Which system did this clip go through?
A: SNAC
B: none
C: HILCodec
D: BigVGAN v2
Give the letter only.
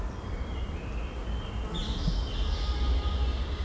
B